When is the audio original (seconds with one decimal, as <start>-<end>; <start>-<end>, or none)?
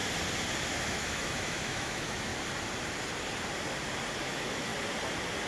0.0-0.8; 2.3-4.2; 4.7-5.5